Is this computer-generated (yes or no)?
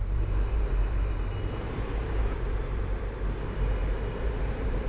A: yes